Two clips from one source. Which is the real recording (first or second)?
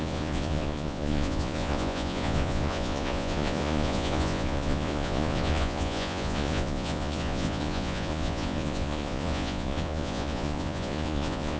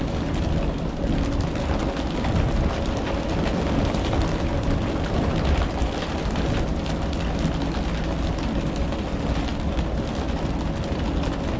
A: second